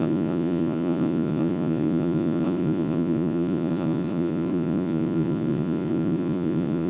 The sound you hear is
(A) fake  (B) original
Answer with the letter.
A